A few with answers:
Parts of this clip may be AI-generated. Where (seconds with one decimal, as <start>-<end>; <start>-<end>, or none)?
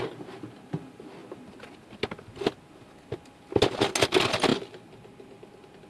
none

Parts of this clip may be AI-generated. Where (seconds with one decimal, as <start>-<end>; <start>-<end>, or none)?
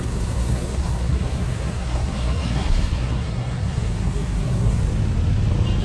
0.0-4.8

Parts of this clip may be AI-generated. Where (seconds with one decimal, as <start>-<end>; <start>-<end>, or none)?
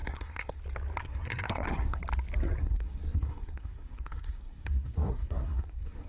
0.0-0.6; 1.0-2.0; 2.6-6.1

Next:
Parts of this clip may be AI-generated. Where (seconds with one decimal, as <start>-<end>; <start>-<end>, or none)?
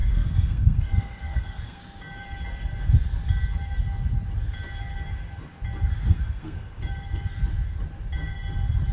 0.0-1.8; 6.1-6.8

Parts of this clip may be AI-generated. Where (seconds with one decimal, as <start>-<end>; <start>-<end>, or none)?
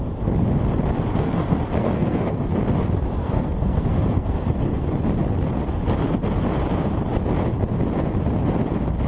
1.1-2.6; 3.2-4.9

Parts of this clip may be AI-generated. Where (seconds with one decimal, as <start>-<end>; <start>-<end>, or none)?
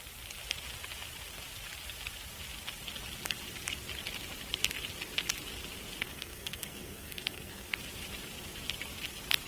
6.0-7.8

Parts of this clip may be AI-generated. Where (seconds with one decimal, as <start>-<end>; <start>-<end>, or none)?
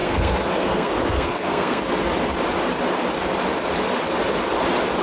0.0-1.8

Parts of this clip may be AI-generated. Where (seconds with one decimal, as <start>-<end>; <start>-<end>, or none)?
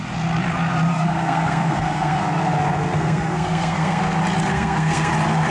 0.9-4.0; 4.5-5.1